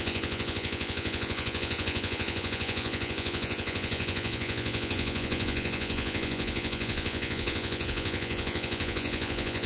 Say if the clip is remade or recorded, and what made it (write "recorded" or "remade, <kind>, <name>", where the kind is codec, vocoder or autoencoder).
remade, vocoder, Vocos